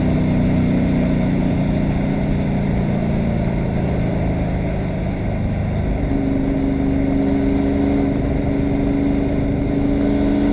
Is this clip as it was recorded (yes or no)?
yes